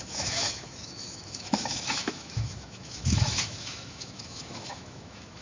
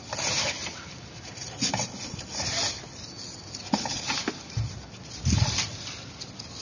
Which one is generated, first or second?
first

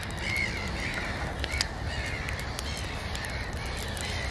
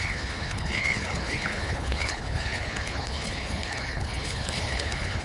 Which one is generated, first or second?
second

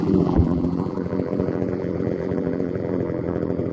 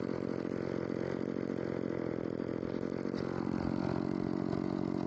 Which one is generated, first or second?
first